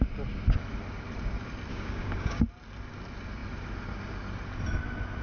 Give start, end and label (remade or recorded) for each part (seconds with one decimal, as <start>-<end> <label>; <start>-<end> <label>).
0.0-1.7 recorded; 1.7-2.4 remade; 2.4-5.2 recorded